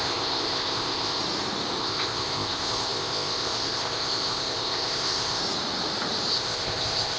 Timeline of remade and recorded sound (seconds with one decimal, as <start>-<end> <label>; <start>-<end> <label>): 0.0-1.2 remade; 1.2-1.8 recorded; 1.8-5.4 remade; 5.4-6.3 recorded; 6.3-7.2 remade